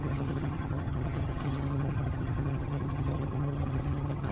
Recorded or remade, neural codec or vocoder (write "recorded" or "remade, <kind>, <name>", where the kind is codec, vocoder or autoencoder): remade, vocoder, HiFi-GAN